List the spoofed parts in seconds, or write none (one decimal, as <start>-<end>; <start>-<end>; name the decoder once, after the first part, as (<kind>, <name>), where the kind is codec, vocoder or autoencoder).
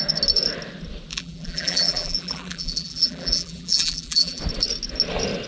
1.1-4.4 (vocoder, BigVGAN v2)